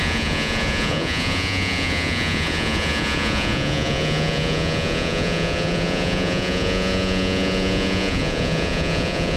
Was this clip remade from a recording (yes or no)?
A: yes